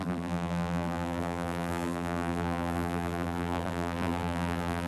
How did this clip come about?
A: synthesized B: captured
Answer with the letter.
A